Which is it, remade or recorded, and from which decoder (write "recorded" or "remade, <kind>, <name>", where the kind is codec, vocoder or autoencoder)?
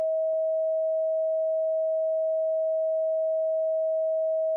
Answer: remade, autoencoder, DAC-VAE